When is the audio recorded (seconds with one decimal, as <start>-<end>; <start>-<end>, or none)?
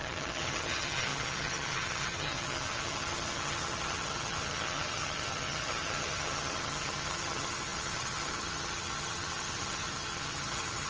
none